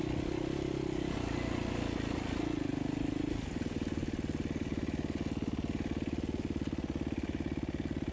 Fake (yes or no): no